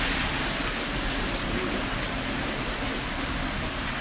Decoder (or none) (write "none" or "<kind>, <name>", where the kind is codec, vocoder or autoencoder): none